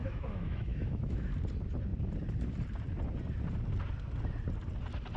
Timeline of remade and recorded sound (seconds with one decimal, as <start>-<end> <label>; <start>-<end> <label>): 0.0-1.3 remade; 1.3-5.2 recorded